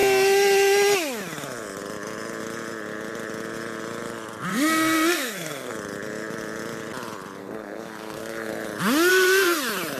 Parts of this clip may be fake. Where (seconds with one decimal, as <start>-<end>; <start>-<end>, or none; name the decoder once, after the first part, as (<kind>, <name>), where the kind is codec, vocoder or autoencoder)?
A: 4.5-5.7 (codec, SNAC); 7.4-8.5; 9.1-9.6